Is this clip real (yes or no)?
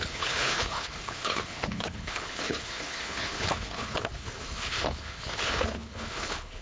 no